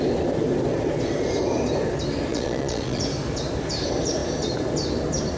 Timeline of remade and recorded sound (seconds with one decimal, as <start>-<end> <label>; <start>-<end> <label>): 0.0-2.3 recorded; 2.3-3.0 remade; 3.0-5.4 recorded